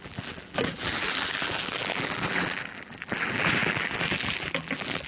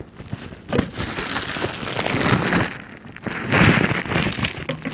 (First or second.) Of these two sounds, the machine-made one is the first